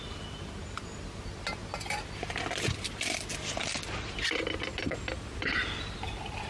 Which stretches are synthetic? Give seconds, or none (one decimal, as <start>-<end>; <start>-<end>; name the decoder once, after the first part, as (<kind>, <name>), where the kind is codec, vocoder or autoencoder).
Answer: none